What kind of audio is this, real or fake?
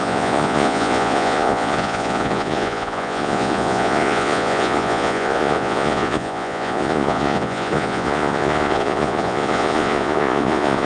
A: fake